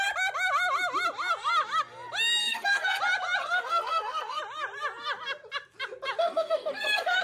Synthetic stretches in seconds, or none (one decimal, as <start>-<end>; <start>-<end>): 2.4-3.0; 3.4-4.4; 6.2-7.2